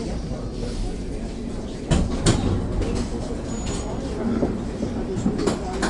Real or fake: real